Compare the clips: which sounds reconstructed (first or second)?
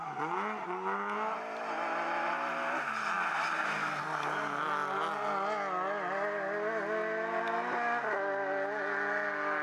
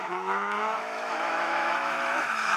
second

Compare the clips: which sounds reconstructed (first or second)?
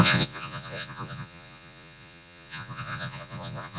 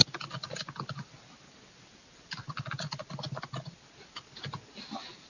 first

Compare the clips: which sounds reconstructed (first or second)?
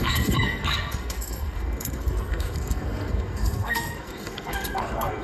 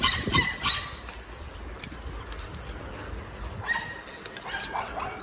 first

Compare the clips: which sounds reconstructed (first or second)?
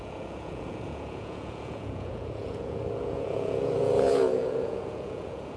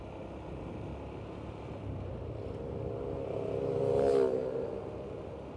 first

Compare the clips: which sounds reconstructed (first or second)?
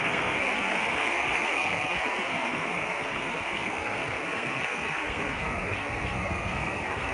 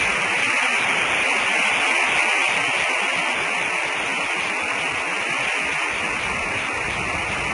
first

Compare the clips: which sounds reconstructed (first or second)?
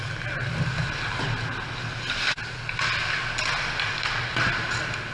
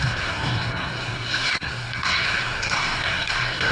second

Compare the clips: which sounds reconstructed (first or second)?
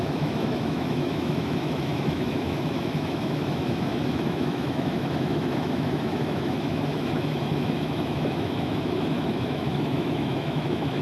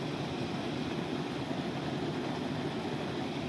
first